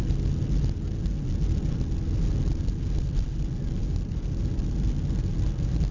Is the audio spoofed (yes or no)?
no